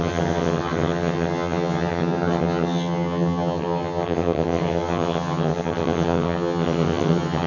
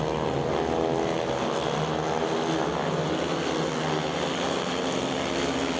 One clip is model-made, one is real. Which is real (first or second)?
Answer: second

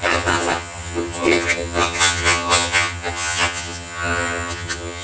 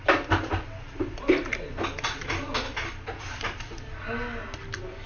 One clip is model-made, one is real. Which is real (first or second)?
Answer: second